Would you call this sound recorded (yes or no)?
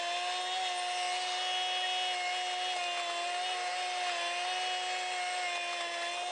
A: yes